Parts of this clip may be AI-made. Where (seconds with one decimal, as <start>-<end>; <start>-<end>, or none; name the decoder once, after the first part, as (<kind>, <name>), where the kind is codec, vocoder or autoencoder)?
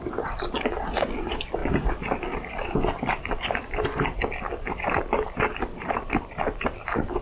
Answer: none